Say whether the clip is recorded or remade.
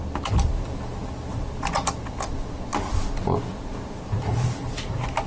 recorded